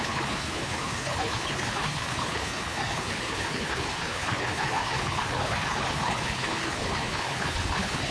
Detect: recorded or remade remade